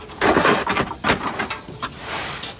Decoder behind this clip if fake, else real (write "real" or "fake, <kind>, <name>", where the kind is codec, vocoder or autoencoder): real